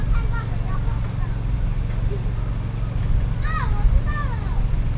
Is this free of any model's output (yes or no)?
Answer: yes